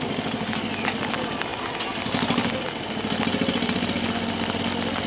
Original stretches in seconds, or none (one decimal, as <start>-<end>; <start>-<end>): 0.0-5.1